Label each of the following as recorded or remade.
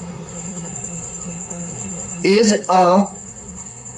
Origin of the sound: remade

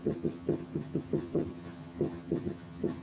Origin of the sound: remade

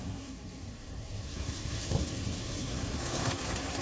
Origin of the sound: remade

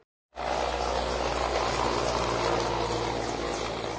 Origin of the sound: recorded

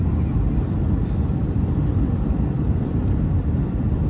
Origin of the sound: remade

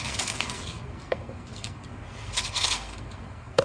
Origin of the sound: remade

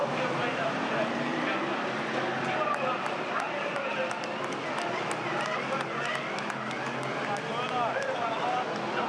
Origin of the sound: recorded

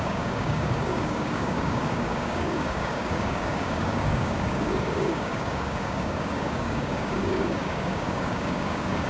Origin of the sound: remade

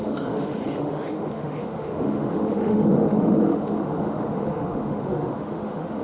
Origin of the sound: remade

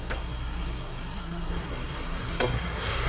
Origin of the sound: remade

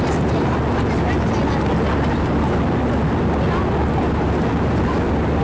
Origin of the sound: recorded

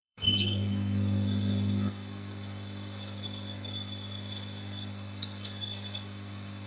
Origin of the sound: remade